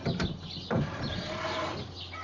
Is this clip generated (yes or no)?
no